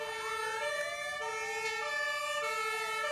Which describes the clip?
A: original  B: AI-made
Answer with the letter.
A